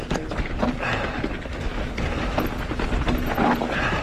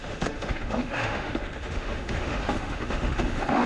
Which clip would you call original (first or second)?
first